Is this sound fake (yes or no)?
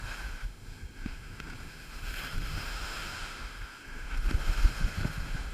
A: yes